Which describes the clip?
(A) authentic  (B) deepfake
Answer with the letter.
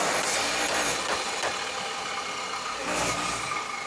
A